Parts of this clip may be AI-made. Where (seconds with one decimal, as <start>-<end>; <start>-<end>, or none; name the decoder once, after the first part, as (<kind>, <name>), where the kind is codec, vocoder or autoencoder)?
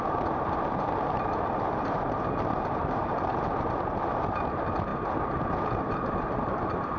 0.0-4.9 (vocoder, BigVGAN v2); 5.6-7.0